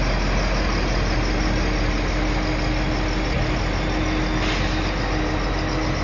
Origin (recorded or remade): recorded